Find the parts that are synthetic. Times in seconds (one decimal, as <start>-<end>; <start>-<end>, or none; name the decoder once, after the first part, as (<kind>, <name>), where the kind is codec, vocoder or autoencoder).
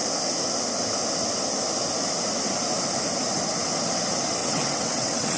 4.4-5.4 (vocoder, WaveNeXt)